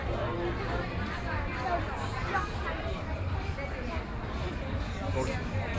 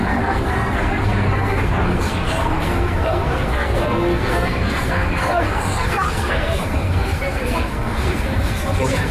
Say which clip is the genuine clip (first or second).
first